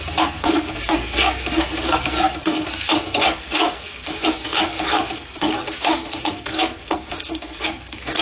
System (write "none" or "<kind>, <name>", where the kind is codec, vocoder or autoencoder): codec, SNAC